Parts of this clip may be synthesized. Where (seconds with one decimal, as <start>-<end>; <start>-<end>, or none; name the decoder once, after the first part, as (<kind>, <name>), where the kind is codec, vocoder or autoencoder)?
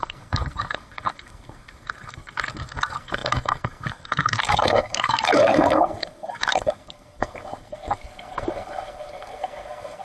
0.0-10.0 (codec, SNAC)